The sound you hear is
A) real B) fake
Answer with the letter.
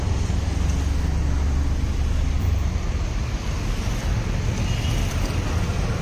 A